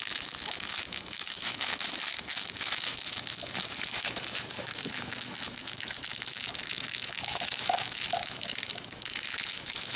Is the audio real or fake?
fake